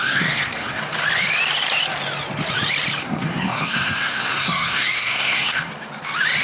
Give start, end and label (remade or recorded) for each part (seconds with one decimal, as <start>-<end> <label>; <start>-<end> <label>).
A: 0.0-0.8 remade; 0.8-3.0 recorded; 3.0-5.7 remade; 5.7-6.4 recorded